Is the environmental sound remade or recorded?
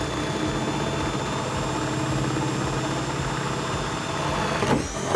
recorded